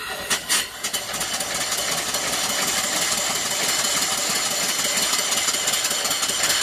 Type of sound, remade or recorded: recorded